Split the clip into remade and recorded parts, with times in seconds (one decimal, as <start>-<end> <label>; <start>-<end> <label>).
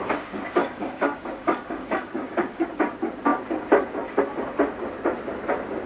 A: 0.0-0.6 recorded; 0.6-2.8 remade; 2.8-5.9 recorded